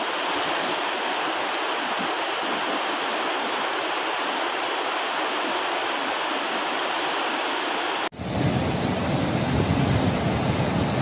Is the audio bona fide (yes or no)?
yes